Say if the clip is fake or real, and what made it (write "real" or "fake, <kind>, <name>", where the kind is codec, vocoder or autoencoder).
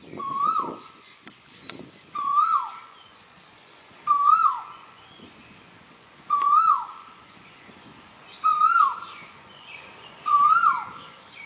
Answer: fake, vocoder, Vocos